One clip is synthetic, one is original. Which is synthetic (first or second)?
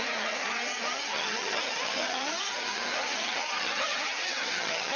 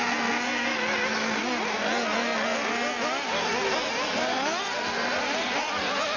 first